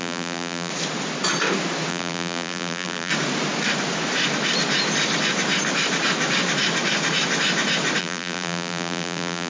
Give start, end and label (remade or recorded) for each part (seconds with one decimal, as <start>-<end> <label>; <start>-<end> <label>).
0.0-0.7 remade; 0.7-1.9 recorded; 1.9-3.1 remade; 3.1-8.0 recorded; 8.0-9.5 remade